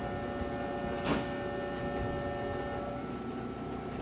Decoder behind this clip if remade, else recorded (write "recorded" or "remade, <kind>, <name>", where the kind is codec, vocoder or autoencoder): recorded